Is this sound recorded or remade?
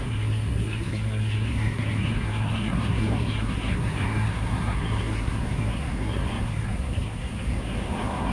remade